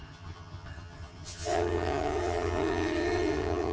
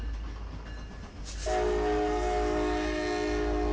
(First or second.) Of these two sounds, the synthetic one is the first